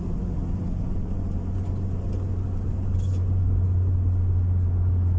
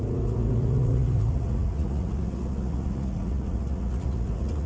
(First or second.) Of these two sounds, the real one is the first